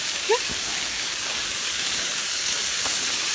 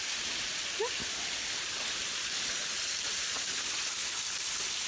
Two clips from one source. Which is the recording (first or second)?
second